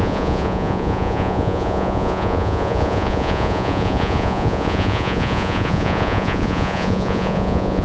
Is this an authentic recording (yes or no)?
no